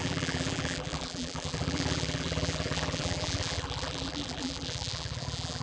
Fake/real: fake